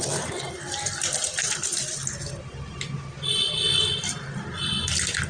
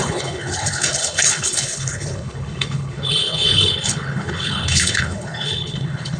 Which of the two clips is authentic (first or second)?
first